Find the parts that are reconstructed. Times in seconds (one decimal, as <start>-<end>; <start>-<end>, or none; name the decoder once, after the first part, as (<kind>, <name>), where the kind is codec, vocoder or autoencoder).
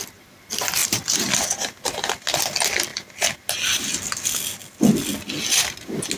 none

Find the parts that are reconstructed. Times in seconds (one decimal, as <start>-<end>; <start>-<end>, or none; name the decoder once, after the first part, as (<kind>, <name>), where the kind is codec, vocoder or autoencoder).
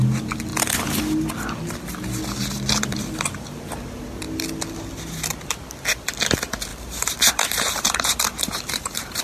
6.7-9.2 (vocoder, BigVGAN v2)